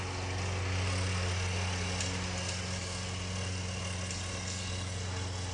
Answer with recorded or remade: recorded